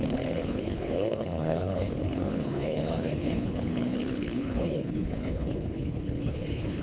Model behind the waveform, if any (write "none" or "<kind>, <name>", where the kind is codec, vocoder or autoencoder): codec, HILCodec